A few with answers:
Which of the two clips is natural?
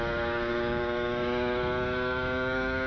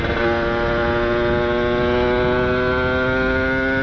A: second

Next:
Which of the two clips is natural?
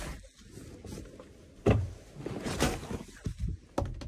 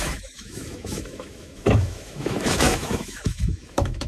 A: first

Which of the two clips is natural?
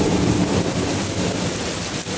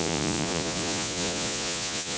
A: first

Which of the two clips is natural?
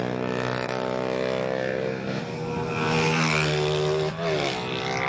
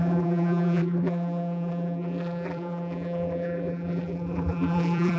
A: first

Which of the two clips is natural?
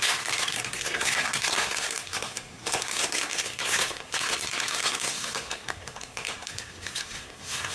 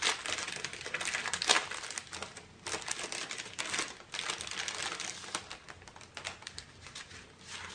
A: second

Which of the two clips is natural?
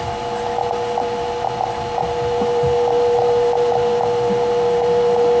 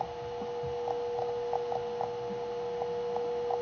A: second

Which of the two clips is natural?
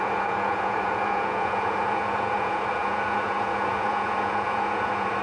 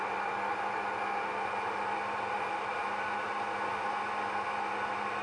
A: second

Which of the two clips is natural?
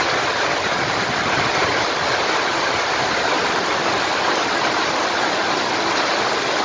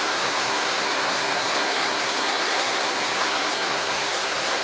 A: first